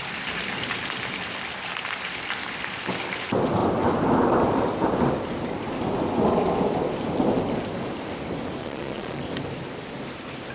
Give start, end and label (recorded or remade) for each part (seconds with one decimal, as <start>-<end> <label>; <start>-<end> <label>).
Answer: 0.0-8.6 recorded; 8.6-9.2 remade; 9.2-10.5 recorded